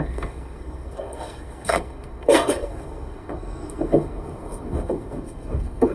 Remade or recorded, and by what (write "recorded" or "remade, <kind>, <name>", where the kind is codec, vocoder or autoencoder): remade, codec, SNAC